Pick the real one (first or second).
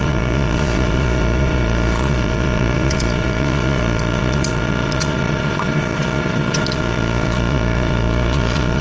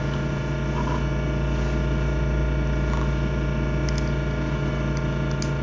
second